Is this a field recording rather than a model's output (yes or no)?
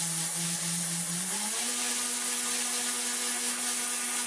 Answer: yes